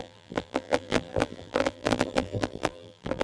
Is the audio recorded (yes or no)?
no